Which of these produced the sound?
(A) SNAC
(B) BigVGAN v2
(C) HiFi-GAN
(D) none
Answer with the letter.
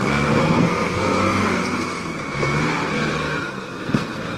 A